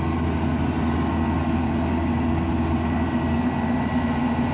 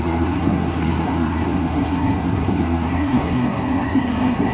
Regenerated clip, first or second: second